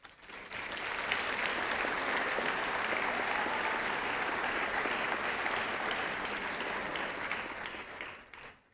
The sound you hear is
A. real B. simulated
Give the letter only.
A